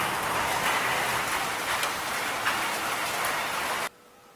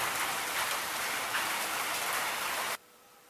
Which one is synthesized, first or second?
second